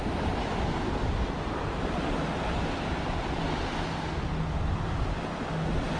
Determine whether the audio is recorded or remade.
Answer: recorded